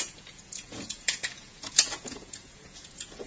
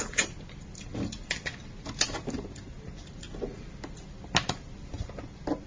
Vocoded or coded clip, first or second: first